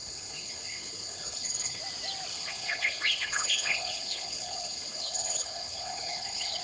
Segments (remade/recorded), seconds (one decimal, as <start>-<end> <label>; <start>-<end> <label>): 0.0-1.8 remade; 1.8-2.3 recorded; 2.3-6.6 remade